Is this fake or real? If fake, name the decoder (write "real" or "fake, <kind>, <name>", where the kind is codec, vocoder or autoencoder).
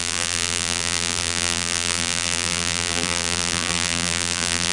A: fake, vocoder, BigVGAN v2